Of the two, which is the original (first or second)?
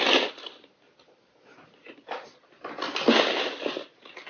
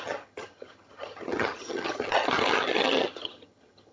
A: first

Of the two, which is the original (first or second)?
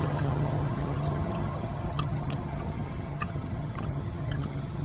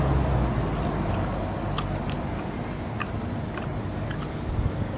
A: second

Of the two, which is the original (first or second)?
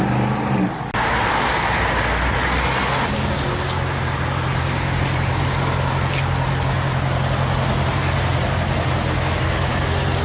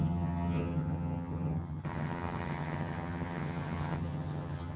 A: first